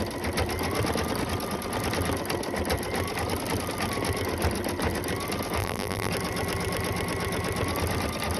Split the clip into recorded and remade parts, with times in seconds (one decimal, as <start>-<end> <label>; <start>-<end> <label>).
0.0-5.6 recorded; 5.6-6.1 remade; 6.1-8.4 recorded